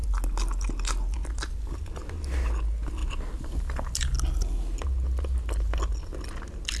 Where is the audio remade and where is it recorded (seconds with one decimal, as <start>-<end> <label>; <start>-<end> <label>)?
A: 0.0-1.2 recorded; 1.2-2.1 remade; 2.1-3.0 recorded; 3.0-3.6 remade; 3.6-6.8 recorded